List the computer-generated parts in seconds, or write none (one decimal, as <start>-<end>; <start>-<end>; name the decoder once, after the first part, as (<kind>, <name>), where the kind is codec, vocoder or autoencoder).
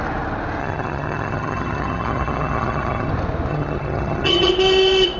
0.6-3.1 (vocoder, HiFi-GAN); 3.5-4.5